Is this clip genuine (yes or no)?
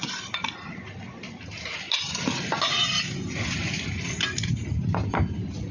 yes